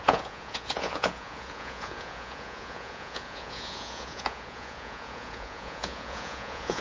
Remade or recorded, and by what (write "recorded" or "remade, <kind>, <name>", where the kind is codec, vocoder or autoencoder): remade, vocoder, Vocos